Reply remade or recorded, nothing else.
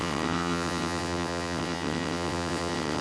remade